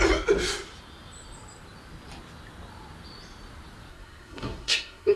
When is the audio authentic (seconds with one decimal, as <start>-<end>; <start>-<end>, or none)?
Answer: 0.0-3.9